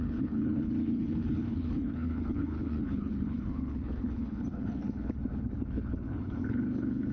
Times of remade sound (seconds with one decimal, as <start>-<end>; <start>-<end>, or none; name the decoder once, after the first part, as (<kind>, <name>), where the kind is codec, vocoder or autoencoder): 0.0-7.1 (codec, HILCodec)